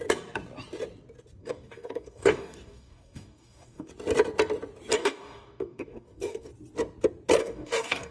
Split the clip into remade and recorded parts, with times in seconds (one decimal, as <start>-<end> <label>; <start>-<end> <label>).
0.0-1.4 recorded; 1.4-3.9 remade; 3.9-5.0 recorded; 5.0-6.5 remade; 6.5-7.4 recorded; 7.4-8.1 remade